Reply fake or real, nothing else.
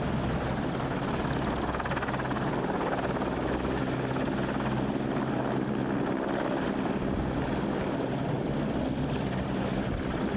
real